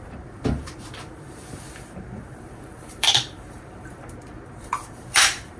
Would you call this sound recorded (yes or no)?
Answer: no